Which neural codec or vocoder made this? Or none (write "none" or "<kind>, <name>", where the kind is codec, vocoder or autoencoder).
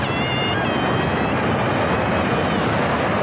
none